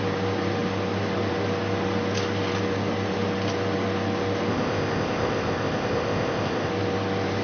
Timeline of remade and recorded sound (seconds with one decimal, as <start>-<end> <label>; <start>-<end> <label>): 0.0-4.5 recorded; 4.5-6.7 remade; 6.7-7.4 recorded